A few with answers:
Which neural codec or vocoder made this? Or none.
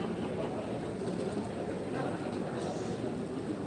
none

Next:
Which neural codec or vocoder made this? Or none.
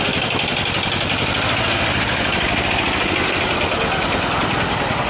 none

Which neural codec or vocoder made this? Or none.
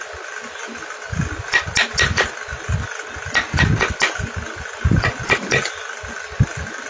none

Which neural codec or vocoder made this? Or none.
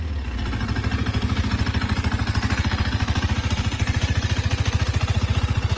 none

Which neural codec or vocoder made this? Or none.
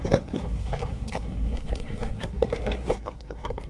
codec, SNAC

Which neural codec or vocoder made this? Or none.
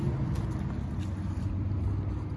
none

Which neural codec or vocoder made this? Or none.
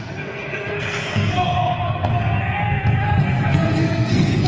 codec, SNAC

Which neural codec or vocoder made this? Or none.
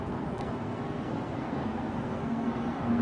codec, SNAC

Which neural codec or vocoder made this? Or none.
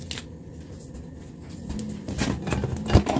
none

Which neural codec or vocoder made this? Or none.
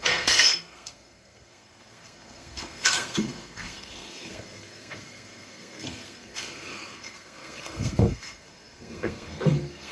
codec, SNAC